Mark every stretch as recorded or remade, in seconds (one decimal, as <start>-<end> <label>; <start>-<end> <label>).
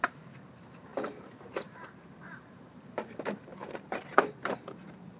0.0-5.2 remade